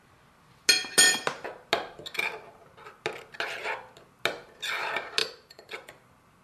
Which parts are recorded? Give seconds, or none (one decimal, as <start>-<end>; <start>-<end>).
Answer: 0.0-5.2; 5.9-6.4

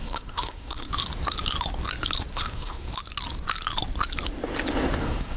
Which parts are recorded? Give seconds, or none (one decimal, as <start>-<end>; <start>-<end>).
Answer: 0.9-2.3; 2.9-5.0

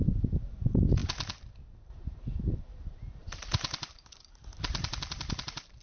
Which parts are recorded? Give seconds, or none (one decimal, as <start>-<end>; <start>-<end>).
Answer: 0.0-3.2

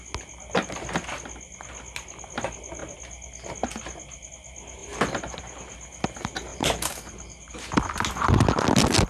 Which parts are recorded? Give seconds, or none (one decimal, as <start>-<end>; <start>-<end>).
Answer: 0.0-4.8; 5.4-6.5; 7.5-9.1

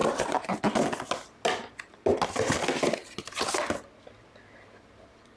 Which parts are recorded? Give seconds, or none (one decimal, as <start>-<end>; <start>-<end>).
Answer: 0.5-5.4

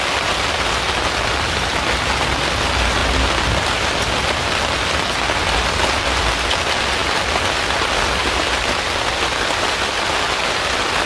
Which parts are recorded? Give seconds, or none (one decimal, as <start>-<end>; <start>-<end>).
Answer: 0.0-11.1

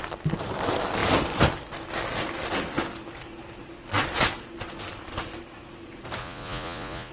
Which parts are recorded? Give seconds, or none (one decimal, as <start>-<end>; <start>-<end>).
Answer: 0.0-6.2

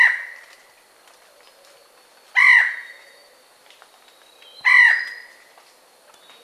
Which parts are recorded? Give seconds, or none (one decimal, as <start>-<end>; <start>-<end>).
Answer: 0.0-6.4